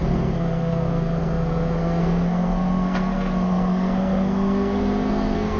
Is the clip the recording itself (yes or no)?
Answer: no